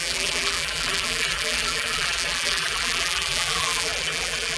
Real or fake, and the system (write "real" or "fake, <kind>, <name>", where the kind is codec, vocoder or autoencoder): fake, vocoder, BigVGAN v2